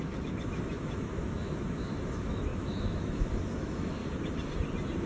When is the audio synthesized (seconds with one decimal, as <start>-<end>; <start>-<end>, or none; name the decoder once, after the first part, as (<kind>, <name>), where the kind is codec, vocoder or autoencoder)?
0.0-4.0 (autoencoder, DAC-VAE)